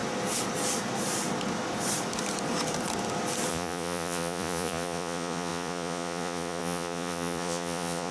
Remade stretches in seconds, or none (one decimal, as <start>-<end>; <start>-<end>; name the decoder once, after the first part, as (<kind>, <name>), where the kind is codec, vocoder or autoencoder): 3.5-8.1 (vocoder, Vocos)